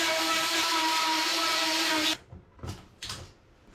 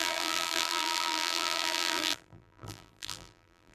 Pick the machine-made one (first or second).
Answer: second